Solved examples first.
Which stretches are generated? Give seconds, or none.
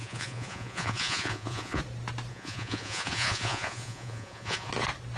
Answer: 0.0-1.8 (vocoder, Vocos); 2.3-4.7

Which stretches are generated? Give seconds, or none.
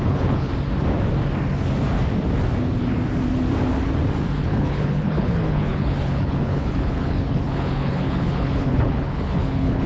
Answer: 0.0-0.5 (codec, HILCodec); 4.4-9.9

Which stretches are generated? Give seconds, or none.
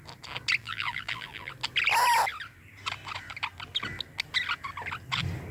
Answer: 0.6-1.5 (vocoder, BigVGAN v2)